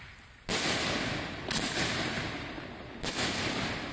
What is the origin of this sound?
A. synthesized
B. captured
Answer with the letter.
B